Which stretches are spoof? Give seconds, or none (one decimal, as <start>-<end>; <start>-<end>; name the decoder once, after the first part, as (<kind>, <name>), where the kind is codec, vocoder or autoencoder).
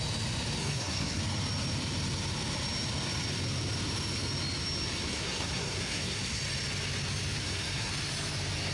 0.6-1.2 (codec, SNAC); 5.1-6.4; 7.4-7.9